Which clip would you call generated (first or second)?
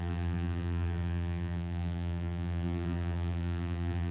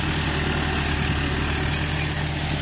first